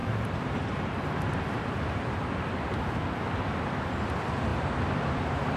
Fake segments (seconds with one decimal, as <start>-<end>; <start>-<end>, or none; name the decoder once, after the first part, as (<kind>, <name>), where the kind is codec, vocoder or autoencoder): 0.0-5.6 (vocoder, BigVGAN v2)